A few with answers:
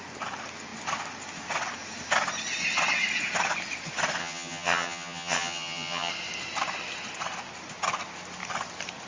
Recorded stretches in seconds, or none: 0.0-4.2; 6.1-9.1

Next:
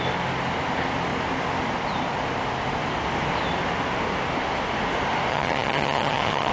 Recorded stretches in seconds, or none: 0.0-5.3